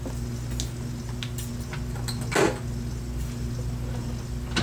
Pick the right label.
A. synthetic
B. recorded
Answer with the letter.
B